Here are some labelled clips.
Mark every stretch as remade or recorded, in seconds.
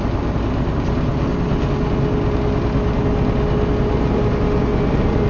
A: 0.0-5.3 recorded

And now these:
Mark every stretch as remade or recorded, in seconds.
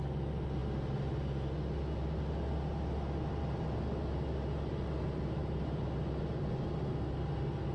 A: 0.0-7.7 recorded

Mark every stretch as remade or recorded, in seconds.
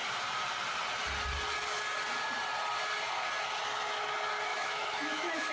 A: 0.0-4.5 recorded; 4.5-5.5 remade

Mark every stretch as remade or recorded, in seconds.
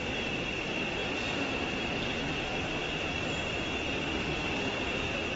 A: 0.0-4.0 recorded; 4.0-4.5 remade; 4.5-5.4 recorded